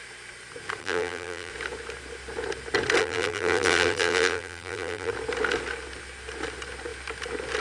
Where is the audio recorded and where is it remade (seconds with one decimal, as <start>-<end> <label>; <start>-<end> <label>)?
0.0-0.8 recorded; 0.8-1.5 remade; 1.5-3.0 recorded; 3.0-5.1 remade; 5.1-7.6 recorded